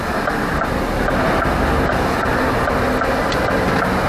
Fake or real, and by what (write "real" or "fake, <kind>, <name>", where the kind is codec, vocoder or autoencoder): real